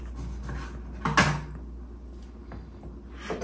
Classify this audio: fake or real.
real